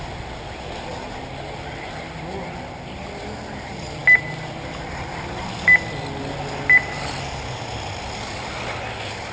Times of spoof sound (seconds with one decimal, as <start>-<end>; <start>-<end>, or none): none

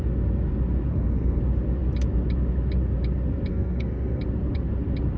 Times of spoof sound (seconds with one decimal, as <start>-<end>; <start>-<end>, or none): 0.9-1.4; 3.5-4.2

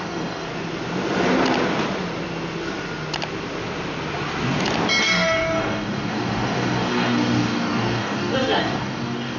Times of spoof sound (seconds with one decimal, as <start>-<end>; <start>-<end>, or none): 0.0-0.5; 5.0-9.4